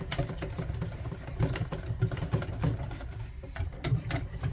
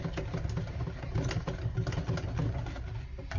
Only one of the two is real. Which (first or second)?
second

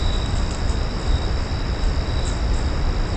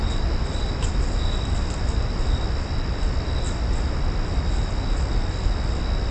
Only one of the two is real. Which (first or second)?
second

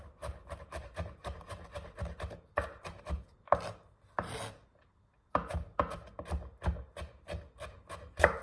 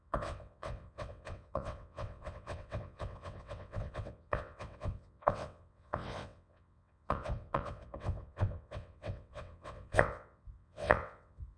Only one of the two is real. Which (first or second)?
first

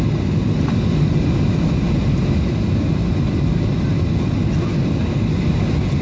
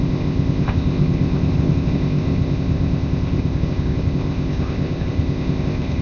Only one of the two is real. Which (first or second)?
first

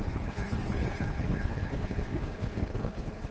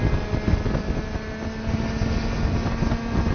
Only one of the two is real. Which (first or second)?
second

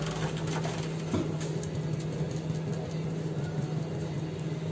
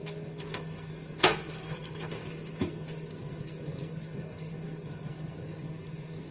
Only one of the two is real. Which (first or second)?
first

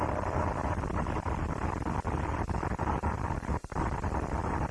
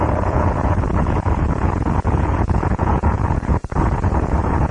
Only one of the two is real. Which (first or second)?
first